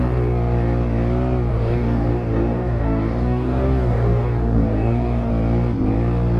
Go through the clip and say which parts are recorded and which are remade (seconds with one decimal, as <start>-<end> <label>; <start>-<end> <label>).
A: 0.0-1.5 recorded; 1.5-5.3 remade; 5.3-6.4 recorded